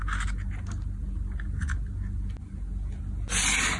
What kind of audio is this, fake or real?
real